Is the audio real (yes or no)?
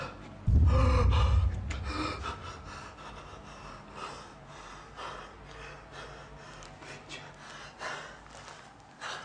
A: yes